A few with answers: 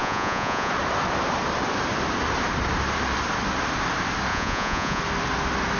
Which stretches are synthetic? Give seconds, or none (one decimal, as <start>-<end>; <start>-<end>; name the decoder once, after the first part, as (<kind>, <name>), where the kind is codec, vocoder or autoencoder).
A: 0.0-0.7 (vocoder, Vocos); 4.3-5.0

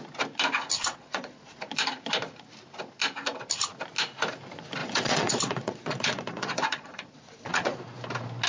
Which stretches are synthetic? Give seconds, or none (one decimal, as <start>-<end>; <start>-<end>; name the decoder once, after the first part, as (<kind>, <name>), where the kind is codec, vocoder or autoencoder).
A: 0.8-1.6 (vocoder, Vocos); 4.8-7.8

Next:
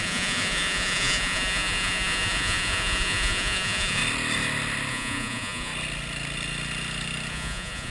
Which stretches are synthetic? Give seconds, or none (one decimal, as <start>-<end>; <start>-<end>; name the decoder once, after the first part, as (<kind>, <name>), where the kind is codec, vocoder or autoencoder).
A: 0.0-4.0 (vocoder, Vocos); 4.9-5.7; 7.3-7.9

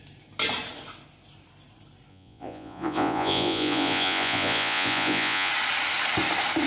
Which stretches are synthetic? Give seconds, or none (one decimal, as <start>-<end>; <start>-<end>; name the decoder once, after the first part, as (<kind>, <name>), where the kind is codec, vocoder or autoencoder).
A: 2.1-5.5 (vocoder, Vocos)

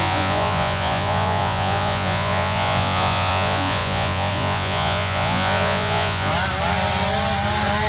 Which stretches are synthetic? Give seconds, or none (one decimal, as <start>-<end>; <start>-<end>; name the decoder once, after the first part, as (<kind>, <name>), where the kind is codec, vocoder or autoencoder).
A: 0.0-6.3 (vocoder, Vocos)